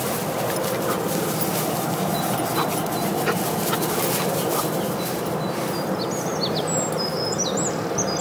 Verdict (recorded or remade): recorded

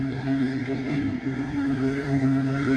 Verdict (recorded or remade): remade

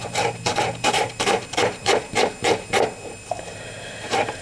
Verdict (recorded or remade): remade